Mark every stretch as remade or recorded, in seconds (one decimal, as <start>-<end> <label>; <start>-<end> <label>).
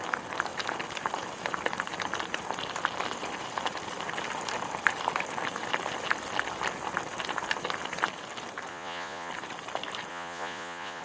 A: 0.0-8.7 recorded; 8.7-9.3 remade; 9.3-10.1 recorded; 10.1-11.0 remade